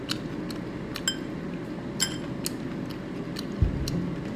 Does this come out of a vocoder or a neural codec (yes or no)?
no